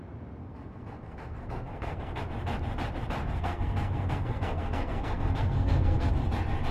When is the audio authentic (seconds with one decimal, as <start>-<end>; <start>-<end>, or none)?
0.0-0.4; 2.2-3.2; 6.1-6.7